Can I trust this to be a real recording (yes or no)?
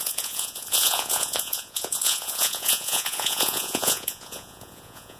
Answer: no